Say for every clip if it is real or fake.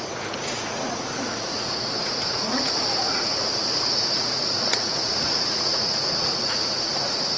fake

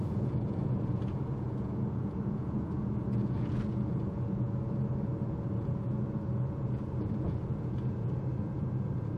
fake